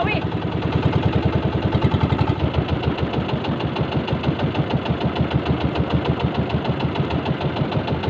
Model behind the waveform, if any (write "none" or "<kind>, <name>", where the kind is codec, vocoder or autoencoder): none